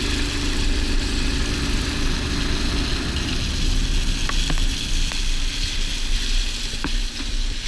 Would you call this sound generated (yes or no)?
no